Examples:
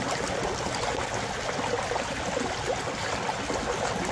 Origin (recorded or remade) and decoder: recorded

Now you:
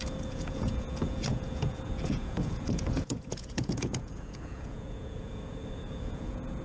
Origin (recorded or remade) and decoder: remade, vocoder, Vocos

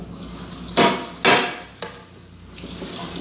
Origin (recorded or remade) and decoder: recorded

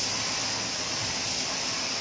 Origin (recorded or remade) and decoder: recorded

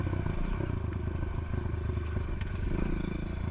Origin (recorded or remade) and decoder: recorded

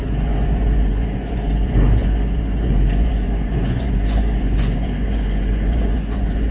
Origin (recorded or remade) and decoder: remade, vocoder, Vocos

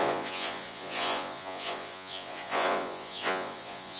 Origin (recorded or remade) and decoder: remade, vocoder, Vocos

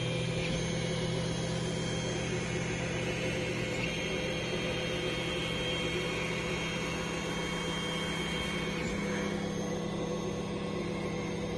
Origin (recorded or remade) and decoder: recorded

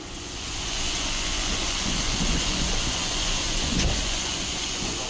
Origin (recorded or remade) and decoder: remade, vocoder, Vocos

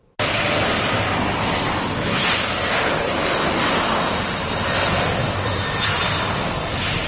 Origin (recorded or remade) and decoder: recorded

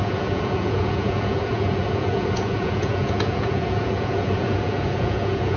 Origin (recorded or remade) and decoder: remade, vocoder, Vocos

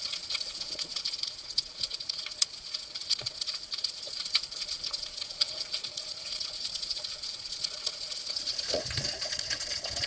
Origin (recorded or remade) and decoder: remade, vocoder, Vocos